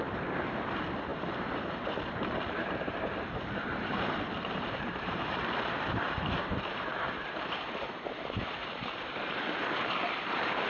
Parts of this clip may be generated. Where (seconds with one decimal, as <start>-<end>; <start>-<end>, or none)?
0.0-10.7